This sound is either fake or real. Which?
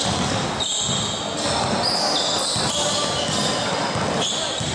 real